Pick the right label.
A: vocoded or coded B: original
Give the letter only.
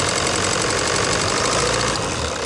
B